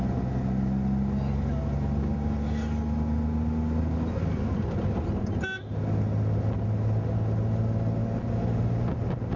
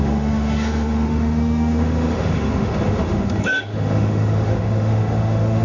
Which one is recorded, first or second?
first